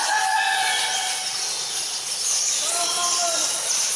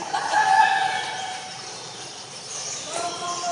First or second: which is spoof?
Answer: second